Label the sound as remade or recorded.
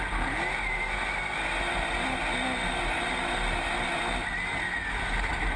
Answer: recorded